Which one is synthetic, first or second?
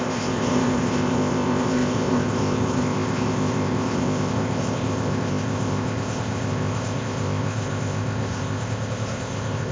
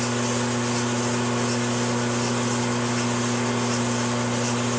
first